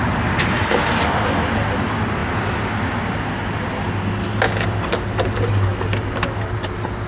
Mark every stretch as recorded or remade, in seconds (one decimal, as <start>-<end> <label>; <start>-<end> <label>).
0.0-7.1 recorded